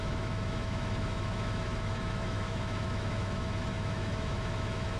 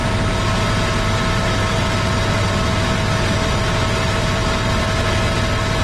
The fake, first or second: first